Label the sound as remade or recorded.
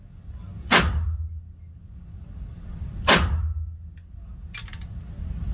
recorded